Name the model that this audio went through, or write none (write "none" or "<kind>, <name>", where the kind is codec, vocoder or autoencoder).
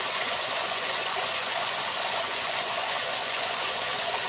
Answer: vocoder, Vocos